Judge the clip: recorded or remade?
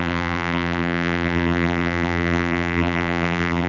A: remade